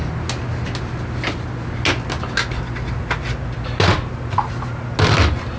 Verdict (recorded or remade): recorded